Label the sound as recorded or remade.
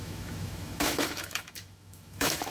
remade